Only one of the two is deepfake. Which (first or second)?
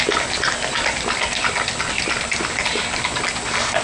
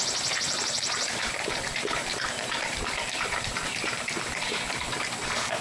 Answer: second